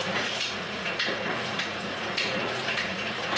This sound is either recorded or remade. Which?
remade